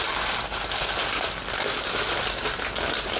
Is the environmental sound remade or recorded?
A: recorded